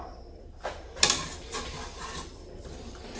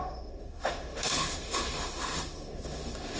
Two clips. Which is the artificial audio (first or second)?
second